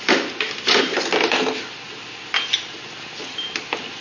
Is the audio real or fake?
real